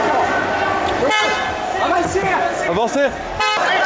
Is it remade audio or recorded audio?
recorded